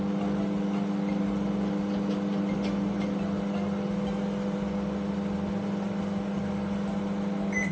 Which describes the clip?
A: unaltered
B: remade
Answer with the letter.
A